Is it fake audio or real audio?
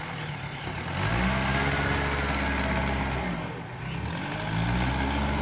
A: real